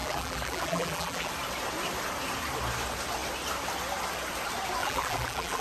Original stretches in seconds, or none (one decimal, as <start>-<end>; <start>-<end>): 1.3-4.8